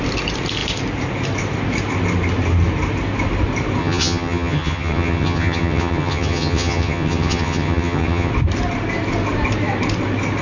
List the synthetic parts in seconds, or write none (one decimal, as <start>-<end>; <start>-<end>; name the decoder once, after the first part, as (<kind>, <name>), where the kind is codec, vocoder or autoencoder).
3.8-8.3 (vocoder, HiFi-GAN)